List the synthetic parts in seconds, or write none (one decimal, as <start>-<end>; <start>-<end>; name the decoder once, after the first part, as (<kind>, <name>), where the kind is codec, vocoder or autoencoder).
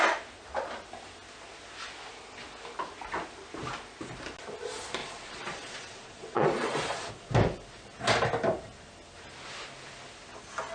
5.0-7.1 (vocoder, Vocos)